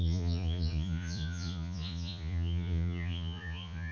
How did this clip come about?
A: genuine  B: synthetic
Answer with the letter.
B